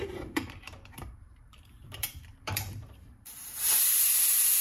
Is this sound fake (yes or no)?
yes